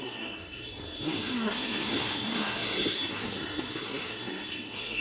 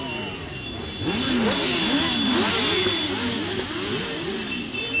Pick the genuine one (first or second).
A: second